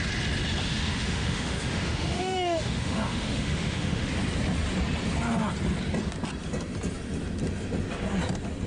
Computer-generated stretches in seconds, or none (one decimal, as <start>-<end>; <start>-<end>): 0.6-4.1